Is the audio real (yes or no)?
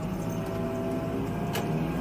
yes